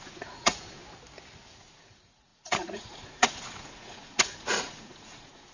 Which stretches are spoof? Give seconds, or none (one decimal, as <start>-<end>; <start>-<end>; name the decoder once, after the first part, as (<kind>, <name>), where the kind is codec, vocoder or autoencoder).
0.0-0.8 (vocoder, Vocos); 1.6-5.5